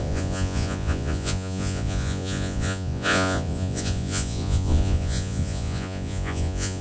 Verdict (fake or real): fake